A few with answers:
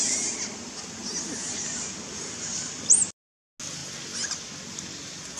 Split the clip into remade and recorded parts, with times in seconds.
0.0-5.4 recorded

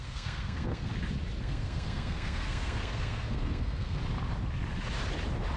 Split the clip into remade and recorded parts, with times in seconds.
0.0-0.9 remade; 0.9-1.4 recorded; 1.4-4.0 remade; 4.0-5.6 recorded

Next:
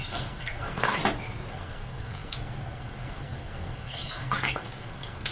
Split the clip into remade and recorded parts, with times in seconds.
0.0-1.0 remade; 1.0-1.5 recorded; 1.5-5.3 remade